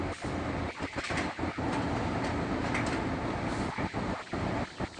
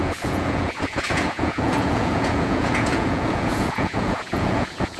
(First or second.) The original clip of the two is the first